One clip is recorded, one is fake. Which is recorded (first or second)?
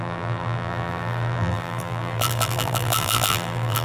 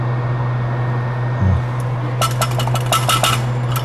second